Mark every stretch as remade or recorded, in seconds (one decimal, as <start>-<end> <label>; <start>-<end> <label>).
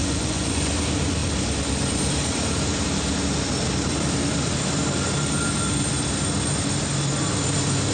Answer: 0.0-0.7 remade; 0.7-7.9 recorded